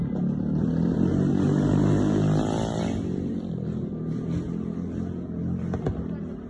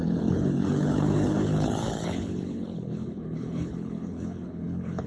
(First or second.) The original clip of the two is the first